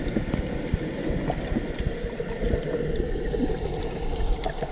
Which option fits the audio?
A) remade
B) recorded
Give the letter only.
A